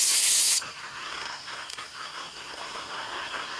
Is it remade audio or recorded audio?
remade